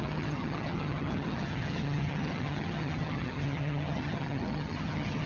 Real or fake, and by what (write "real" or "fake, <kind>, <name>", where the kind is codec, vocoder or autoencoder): fake, vocoder, HiFi-GAN